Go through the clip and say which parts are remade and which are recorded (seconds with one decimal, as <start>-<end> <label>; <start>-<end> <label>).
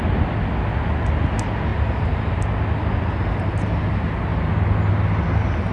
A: 0.0-1.7 recorded; 1.7-2.4 remade; 2.4-5.7 recorded